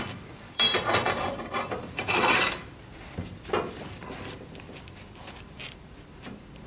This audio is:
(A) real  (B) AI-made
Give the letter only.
B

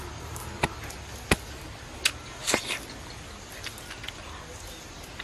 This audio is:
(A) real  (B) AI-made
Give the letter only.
A